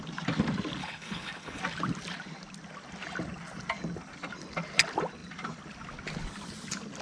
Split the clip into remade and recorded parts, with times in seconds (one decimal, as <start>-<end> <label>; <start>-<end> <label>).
0.0-0.8 recorded; 0.8-1.6 remade; 1.6-7.0 recorded